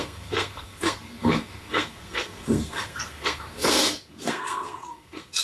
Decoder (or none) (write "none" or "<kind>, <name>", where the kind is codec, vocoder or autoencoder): codec, SNAC